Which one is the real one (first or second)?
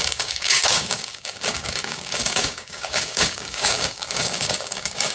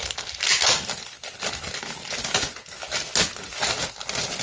second